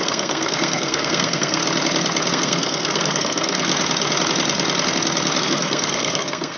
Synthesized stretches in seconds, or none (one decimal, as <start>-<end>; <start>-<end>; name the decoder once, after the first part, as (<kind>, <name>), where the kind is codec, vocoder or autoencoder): 0.0-1.6 (codec, SNAC); 2.3-3.7; 5.4-6.6